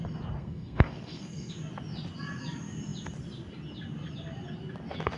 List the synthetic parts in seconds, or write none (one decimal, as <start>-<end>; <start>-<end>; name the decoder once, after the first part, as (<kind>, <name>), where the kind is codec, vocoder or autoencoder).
0.4-1.5 (codec, SNAC)